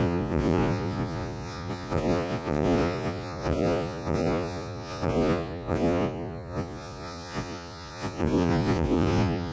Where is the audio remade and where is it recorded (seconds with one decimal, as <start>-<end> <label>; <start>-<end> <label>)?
0.0-9.5 remade